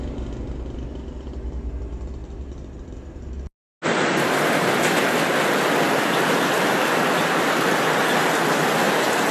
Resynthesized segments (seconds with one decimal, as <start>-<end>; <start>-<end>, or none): none